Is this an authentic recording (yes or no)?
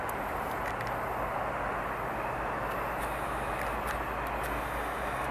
yes